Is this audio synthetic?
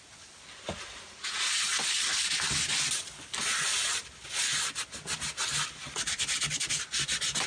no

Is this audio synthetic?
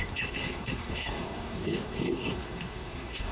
yes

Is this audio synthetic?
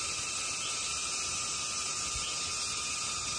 no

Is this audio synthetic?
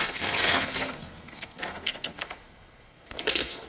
yes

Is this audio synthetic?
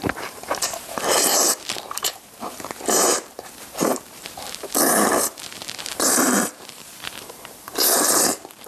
yes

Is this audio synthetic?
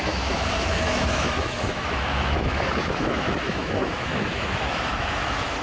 yes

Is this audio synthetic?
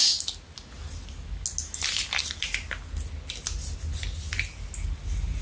no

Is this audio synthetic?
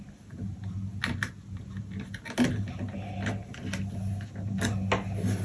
no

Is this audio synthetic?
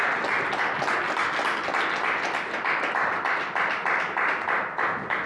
no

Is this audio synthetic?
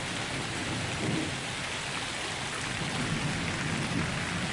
no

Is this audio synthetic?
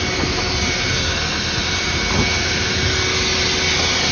no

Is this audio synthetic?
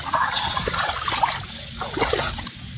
no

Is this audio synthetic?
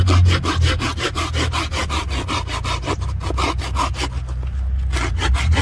no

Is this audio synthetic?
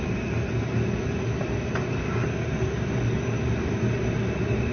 no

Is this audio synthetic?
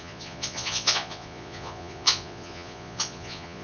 yes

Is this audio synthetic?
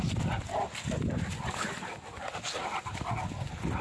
no